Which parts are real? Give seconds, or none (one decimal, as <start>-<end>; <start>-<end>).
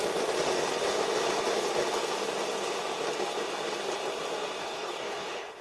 0.0-4.6